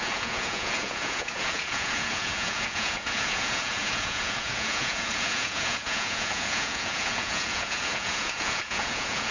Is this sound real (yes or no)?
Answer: no